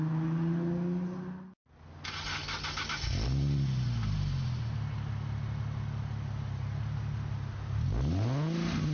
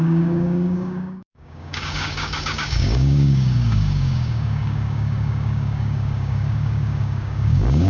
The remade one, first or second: second